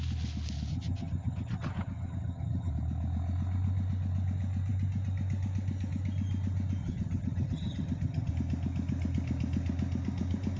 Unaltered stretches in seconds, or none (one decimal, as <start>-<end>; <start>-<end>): 0.0-0.7; 2.7-6.8; 8.3-10.6